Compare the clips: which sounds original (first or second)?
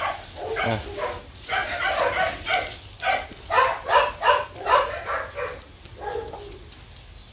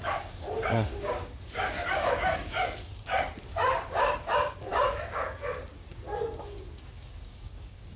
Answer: first